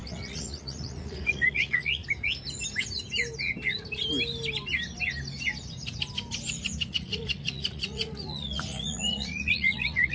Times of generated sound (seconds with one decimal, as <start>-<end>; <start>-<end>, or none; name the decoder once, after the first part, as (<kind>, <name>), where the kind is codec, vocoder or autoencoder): 0.0-2.0 (vocoder, Vocos); 6.9-10.1